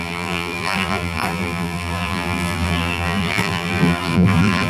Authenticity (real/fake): fake